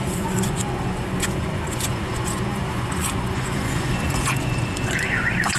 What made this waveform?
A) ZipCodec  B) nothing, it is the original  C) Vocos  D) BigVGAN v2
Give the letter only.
C